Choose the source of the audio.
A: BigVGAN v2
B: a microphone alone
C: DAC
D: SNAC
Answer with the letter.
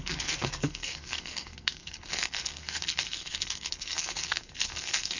D